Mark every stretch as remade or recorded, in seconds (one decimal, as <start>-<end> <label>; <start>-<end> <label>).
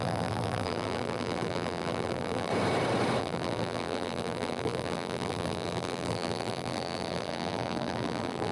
0.0-2.5 remade; 2.5-3.2 recorded; 3.2-8.5 remade